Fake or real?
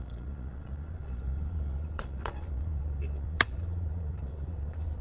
fake